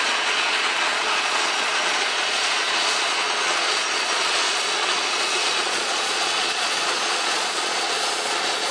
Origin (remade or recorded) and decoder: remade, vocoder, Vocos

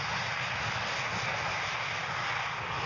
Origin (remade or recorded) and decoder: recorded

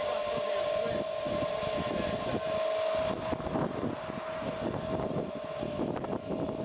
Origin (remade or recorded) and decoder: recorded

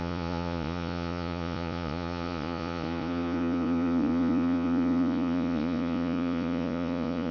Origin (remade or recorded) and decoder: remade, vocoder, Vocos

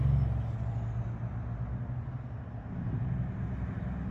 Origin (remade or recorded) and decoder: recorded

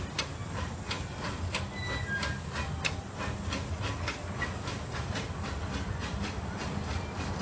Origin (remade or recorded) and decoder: recorded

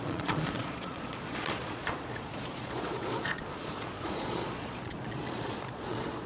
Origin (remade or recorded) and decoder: remade, vocoder, Vocos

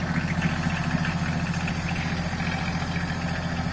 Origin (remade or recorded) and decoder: recorded